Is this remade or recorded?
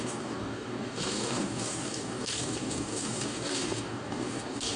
remade